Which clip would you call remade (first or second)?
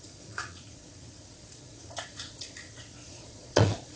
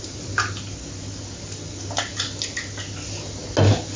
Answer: first